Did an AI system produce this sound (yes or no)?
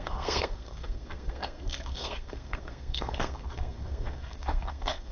yes